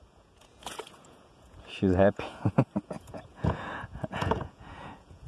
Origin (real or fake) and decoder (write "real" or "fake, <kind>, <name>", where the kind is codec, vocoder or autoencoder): fake, vocoder, Vocos